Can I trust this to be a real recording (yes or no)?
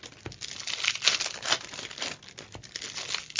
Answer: yes